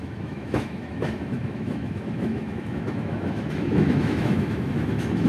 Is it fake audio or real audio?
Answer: fake